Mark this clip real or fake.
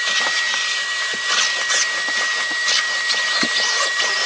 real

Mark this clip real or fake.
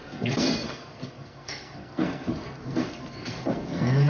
fake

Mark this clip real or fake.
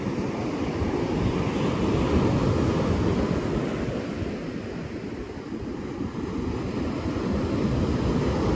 real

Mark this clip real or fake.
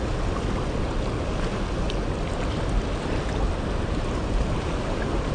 real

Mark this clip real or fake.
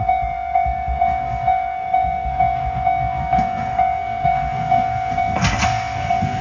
fake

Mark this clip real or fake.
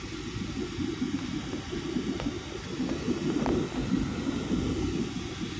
real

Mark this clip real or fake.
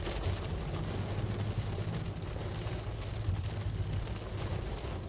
real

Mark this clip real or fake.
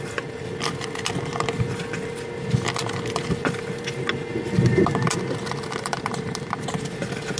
real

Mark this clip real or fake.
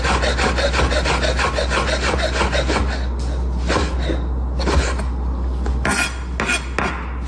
real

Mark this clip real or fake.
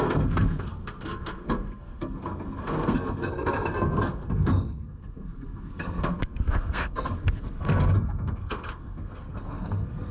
fake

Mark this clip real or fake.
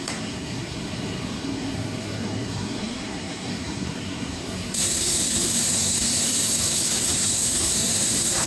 fake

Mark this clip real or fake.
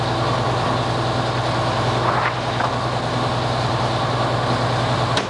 real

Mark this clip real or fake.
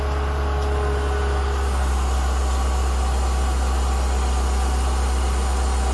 real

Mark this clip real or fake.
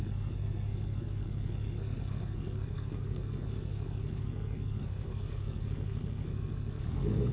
fake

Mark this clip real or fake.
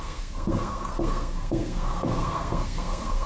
fake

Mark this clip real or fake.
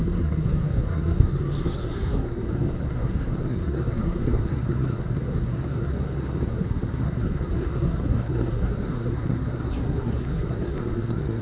fake